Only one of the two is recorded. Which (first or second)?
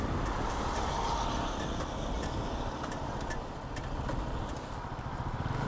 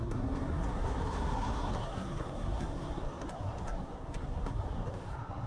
first